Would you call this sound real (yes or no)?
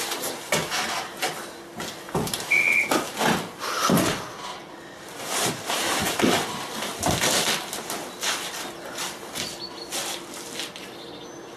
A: yes